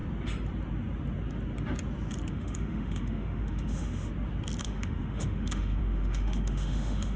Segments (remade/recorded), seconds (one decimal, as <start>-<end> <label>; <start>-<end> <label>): 0.0-2.3 recorded; 2.3-4.1 remade; 4.1-4.6 recorded; 4.6-7.2 remade